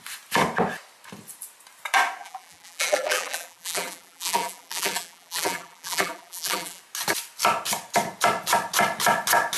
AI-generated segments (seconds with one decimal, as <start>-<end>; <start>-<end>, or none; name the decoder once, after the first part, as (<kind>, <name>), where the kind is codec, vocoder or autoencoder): 2.2-6.8 (vocoder, BigVGAN v2)